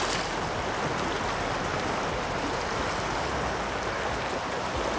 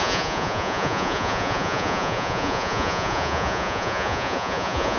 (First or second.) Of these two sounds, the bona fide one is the first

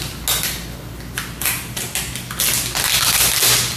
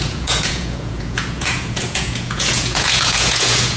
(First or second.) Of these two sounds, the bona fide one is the first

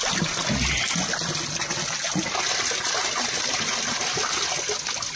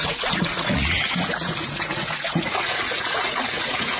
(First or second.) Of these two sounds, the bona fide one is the first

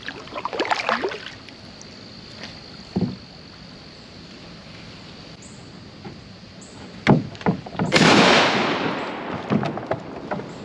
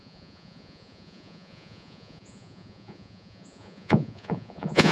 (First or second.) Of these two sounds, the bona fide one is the first